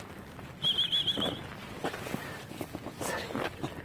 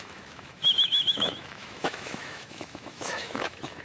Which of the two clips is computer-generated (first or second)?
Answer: second